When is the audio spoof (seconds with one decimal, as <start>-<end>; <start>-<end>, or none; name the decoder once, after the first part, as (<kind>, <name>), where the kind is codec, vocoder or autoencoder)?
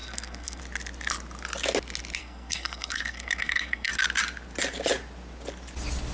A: 0.0-0.6 (codec, SNAC); 2.2-3.9